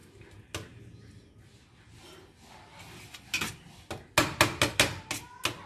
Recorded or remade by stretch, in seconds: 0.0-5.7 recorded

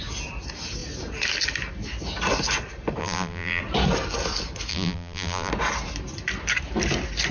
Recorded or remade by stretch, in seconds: 0.0-3.0 recorded; 3.0-3.6 remade; 3.6-4.7 recorded; 4.7-5.5 remade; 5.5-7.3 recorded